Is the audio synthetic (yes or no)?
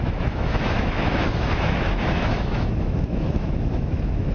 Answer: yes